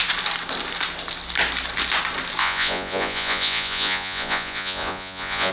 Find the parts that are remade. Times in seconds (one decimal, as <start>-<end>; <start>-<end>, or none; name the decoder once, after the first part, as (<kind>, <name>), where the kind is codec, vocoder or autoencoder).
2.4-5.5 (vocoder, Vocos)